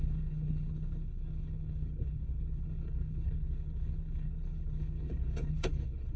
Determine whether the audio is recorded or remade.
remade